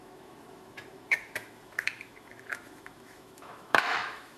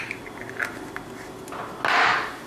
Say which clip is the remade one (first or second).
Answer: first